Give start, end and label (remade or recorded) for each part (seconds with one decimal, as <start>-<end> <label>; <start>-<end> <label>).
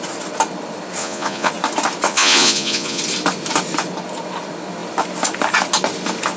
0.0-1.0 recorded; 1.0-1.5 remade; 1.5-2.1 recorded; 2.1-3.0 remade; 3.0-6.4 recorded